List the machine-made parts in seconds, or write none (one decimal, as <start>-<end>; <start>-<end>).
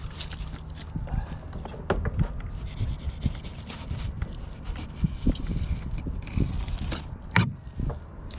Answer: none